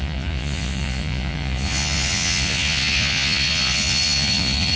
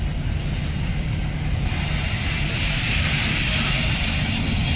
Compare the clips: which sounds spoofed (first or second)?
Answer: first